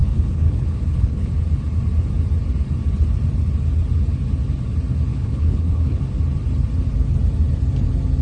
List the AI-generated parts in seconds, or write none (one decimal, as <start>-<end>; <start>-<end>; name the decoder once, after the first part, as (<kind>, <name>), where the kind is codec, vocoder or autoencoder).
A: 0.0-1.3 (codec, HILCodec); 5.1-6.0